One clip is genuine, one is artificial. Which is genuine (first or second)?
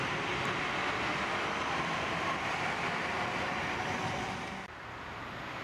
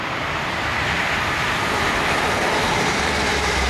first